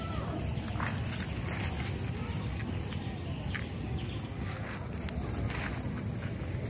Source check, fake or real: real